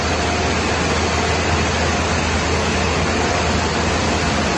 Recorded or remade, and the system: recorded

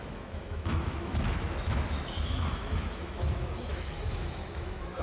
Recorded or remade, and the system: remade, autoencoder, DAC-VAE